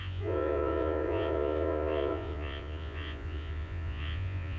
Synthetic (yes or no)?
yes